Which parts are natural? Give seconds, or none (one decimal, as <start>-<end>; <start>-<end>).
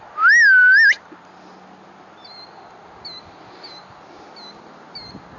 0.0-5.4